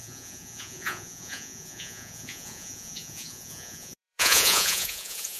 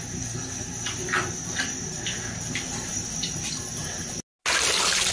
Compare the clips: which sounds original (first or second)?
second